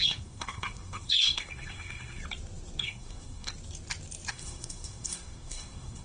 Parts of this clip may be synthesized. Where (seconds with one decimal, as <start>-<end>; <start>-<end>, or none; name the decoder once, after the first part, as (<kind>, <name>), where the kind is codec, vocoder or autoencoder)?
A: 0.0-2.2 (codec, SNAC); 2.8-3.5; 4.3-6.0